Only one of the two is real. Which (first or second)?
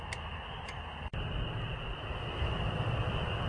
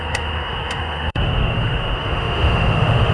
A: first